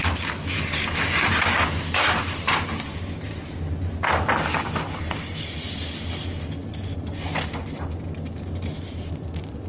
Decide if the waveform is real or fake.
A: real